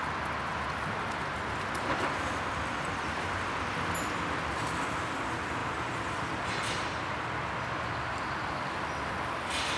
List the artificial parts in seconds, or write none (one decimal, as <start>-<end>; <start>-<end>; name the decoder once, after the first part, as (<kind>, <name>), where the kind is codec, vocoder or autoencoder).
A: none